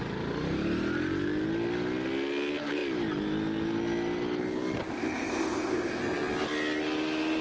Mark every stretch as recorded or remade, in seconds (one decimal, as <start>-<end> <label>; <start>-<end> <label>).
0.0-4.9 recorded; 4.9-6.0 remade; 6.0-7.4 recorded